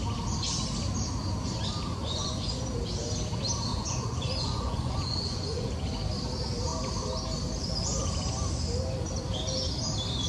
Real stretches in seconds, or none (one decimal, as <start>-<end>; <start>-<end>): 0.0-1.9; 2.6-3.7; 5.7-10.3